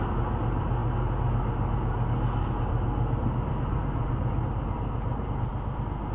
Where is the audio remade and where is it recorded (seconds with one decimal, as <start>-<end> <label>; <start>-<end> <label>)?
0.0-6.1 recorded